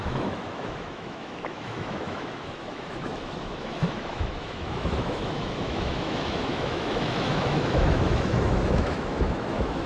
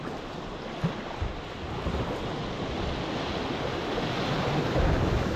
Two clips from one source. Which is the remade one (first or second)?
first